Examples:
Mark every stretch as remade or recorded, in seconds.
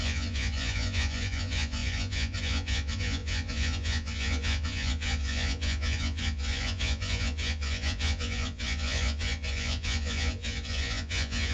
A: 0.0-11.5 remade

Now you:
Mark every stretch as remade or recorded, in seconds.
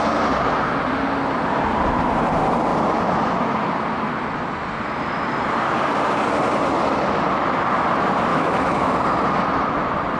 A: 0.0-8.3 recorded; 8.3-8.9 remade; 8.9-10.2 recorded